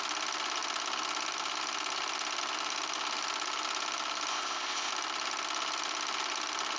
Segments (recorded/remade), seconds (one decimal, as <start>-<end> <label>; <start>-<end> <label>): 0.0-4.3 recorded; 4.3-4.9 remade; 4.9-6.8 recorded